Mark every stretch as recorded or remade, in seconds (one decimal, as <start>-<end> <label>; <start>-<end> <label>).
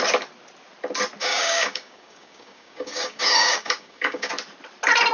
0.0-1.2 recorded; 1.2-4.3 remade; 4.3-5.1 recorded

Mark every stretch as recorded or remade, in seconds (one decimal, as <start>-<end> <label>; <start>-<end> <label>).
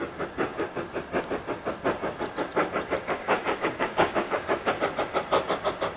0.0-3.2 recorded; 3.2-4.7 remade; 4.7-6.0 recorded